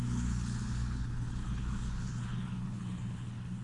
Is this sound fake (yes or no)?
yes